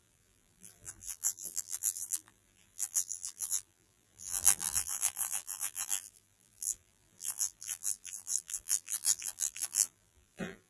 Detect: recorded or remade remade